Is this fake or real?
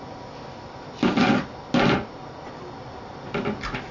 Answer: real